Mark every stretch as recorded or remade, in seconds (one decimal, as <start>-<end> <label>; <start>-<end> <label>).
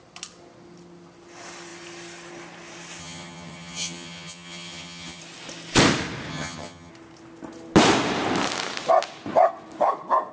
0.0-3.0 recorded; 3.0-5.2 remade; 5.2-6.3 recorded; 6.3-6.9 remade; 6.9-10.3 recorded